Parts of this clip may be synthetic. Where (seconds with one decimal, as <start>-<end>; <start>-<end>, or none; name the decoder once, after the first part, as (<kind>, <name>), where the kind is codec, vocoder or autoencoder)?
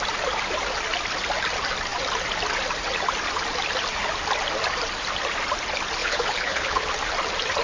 6.0-6.9 (codec, HILCodec)